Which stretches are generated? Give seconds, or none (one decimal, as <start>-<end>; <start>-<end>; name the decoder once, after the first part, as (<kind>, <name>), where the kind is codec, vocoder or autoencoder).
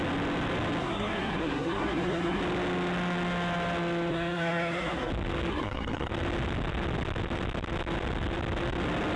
0.8-2.4 (codec, SNAC); 4.1-5.1; 5.5-6.1